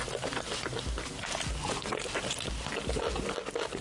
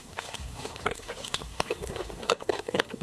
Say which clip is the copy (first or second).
second